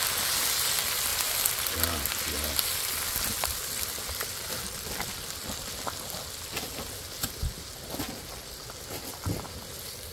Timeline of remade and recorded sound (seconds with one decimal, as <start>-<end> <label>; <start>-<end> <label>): 0.0-10.1 recorded